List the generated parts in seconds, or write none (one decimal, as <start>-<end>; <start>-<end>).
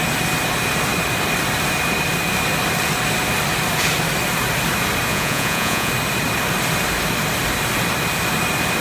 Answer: 5.1-5.9